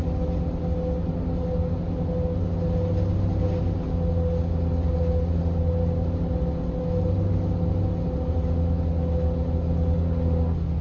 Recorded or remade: recorded